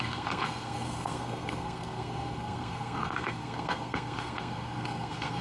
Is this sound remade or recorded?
remade